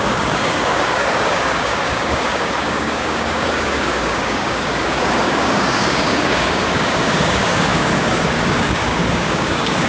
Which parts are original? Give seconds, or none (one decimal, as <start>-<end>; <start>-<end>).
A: none